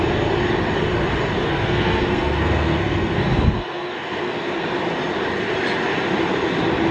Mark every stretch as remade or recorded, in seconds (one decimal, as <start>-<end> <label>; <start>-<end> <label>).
0.0-1.5 recorded; 1.5-4.5 remade; 4.5-6.9 recorded